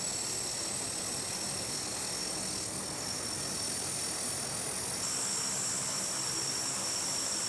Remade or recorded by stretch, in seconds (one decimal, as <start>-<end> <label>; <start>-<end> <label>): 0.0-7.5 recorded